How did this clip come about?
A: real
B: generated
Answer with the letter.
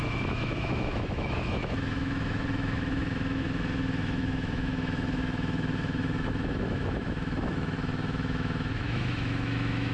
B